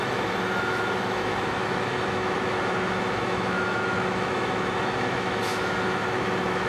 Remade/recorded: remade